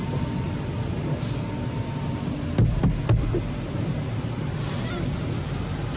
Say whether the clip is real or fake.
real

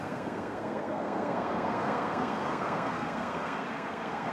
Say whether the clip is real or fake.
fake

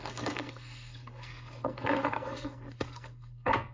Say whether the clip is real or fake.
fake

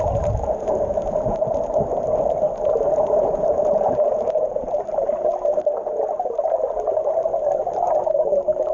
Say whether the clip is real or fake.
real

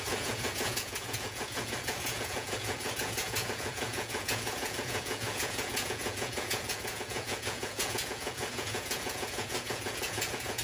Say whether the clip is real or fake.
fake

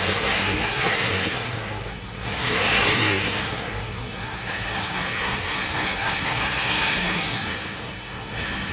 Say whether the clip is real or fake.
fake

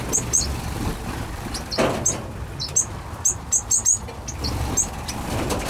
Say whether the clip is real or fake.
real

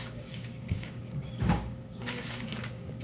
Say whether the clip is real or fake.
fake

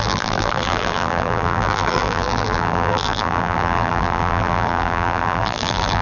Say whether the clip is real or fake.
fake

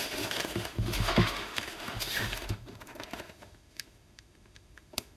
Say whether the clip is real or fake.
fake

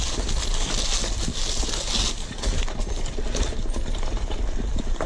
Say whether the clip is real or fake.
real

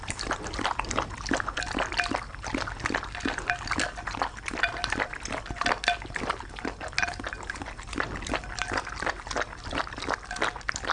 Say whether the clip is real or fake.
real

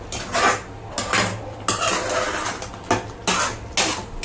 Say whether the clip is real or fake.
real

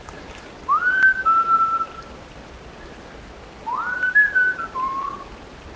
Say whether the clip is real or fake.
real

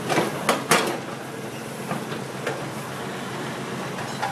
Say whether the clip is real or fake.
real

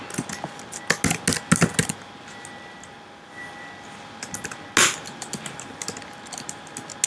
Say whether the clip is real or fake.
real